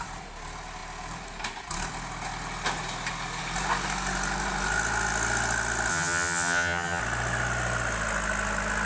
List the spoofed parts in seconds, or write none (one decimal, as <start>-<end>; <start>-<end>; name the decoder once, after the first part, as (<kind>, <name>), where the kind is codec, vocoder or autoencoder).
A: 5.9-7.0 (vocoder, HiFi-GAN)